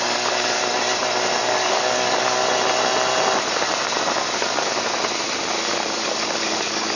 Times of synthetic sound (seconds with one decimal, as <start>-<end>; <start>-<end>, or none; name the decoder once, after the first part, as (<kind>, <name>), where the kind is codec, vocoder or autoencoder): 0.0-0.6 (codec, DAC); 1.4-2.4; 5.4-7.0

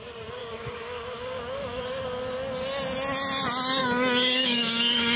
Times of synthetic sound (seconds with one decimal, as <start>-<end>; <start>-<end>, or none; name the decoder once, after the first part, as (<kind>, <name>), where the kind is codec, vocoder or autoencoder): 0.4-1.8 (codec, DAC); 3.8-5.2

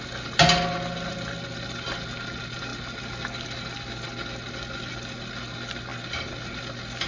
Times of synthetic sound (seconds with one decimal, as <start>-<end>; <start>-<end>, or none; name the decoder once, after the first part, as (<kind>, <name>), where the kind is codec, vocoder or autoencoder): none

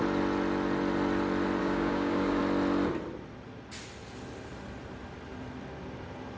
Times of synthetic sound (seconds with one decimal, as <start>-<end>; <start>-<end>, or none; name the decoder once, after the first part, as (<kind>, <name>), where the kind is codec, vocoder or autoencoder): 1.6-2.4 (codec, DAC)

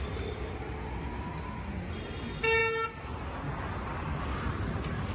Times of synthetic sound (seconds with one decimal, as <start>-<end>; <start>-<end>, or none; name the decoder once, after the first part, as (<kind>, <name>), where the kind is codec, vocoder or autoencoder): none

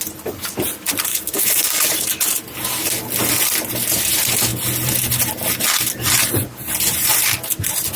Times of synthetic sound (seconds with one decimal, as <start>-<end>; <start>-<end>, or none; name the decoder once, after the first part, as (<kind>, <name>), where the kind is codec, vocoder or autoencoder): 1.1-1.9 (codec, DAC)

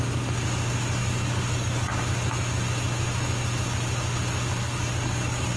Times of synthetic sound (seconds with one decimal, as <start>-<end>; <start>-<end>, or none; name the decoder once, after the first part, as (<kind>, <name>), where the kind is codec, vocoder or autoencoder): 1.0-1.9 (codec, DAC); 4.6-5.6

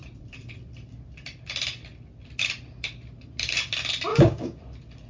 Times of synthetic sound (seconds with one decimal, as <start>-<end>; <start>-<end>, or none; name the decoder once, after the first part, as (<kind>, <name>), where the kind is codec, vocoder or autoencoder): 4.1-4.6 (codec, DAC)